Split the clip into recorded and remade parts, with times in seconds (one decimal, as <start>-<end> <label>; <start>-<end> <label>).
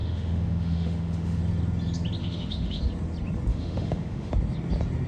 0.0-1.4 remade; 1.4-2.2 recorded; 2.2-2.8 remade; 2.8-3.5 recorded; 3.5-4.3 remade; 4.3-5.1 recorded